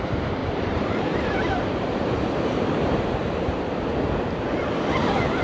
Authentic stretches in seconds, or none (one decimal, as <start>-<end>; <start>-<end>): 0.0-0.4; 3.6-5.4